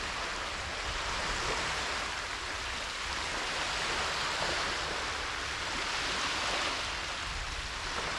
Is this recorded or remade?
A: recorded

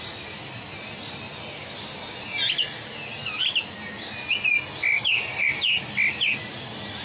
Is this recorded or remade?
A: recorded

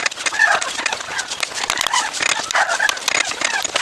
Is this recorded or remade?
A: recorded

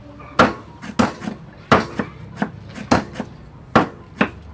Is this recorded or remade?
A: recorded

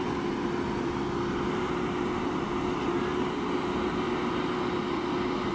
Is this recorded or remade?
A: recorded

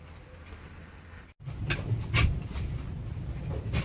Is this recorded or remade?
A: recorded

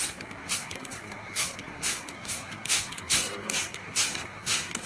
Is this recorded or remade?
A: remade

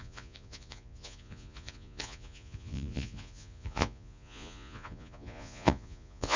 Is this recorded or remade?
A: remade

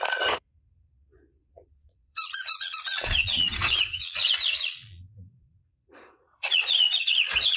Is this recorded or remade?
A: remade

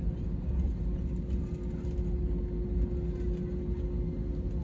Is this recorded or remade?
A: recorded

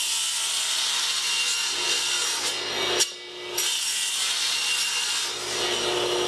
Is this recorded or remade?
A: recorded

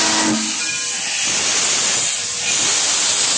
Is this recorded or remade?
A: recorded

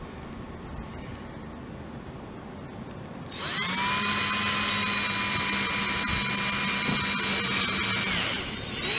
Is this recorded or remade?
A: recorded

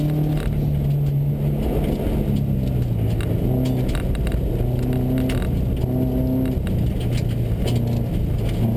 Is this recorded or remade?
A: recorded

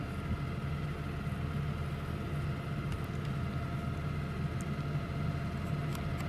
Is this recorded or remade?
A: recorded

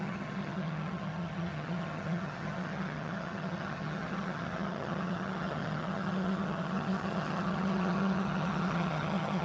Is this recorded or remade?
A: remade